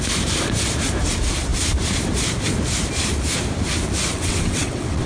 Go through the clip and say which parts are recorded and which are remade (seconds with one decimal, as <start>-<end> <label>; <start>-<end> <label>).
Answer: 0.0-4.1 recorded; 4.1-5.1 remade